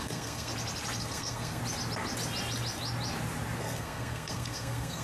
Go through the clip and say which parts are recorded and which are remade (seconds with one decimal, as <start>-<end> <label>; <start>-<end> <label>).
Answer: 0.0-0.5 remade; 0.5-1.0 recorded; 1.0-1.6 remade; 1.6-3.6 recorded; 3.6-5.0 remade